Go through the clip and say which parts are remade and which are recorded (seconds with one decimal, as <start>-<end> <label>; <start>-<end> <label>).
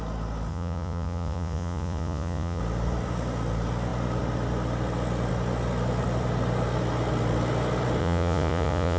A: 0.0-0.5 recorded; 0.5-2.6 remade; 2.6-8.0 recorded; 8.0-9.0 remade